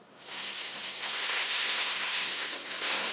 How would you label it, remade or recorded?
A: remade